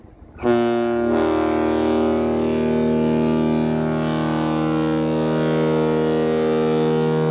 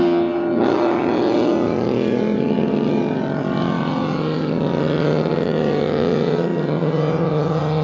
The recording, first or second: first